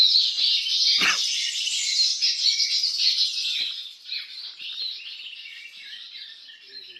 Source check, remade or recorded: recorded